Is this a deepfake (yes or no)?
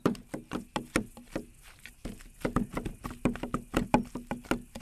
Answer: no